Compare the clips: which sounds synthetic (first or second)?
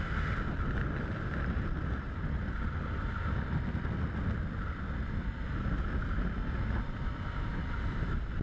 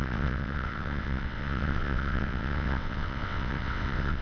second